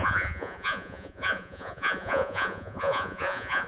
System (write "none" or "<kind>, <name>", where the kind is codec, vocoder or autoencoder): vocoder, Vocos